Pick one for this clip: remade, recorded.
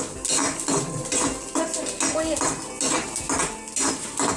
recorded